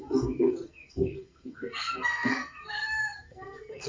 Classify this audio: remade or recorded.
remade